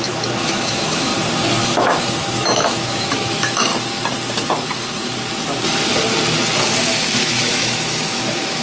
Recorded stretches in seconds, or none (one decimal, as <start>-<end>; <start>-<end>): 1.1-1.6; 3.7-7.2